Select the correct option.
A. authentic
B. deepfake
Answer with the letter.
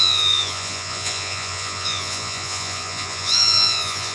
B